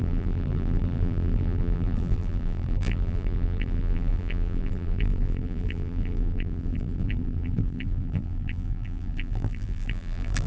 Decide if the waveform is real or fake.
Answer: fake